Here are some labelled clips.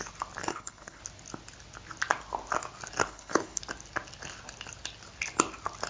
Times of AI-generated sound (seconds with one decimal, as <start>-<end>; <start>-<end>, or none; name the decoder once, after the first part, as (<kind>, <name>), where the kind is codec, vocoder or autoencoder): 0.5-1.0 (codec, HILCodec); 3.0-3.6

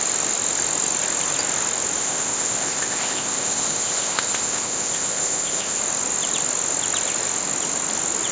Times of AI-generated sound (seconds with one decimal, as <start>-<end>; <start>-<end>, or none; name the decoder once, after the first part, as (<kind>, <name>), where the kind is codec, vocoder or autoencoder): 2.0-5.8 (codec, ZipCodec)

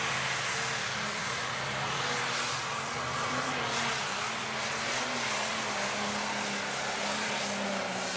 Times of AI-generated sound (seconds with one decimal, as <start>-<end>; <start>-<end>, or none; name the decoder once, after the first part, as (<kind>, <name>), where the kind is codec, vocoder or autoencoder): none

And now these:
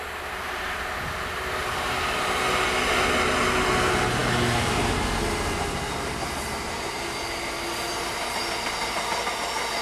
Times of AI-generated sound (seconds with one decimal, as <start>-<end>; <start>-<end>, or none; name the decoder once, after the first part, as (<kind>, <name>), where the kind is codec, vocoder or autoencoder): none

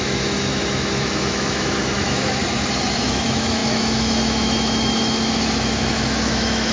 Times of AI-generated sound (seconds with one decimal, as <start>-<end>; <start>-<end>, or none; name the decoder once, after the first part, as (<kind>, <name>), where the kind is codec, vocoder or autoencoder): 0.0-2.4 (autoencoder, DAC-VAE); 3.0-6.7

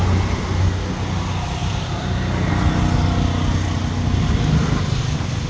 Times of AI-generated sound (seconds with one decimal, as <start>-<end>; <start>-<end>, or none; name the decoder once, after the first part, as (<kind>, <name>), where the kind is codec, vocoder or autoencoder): 1.6-2.5 (vocoder, BigVGAN v2)